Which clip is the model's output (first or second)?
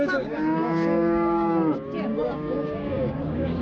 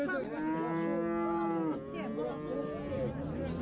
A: first